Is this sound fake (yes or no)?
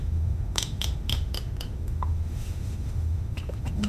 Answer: yes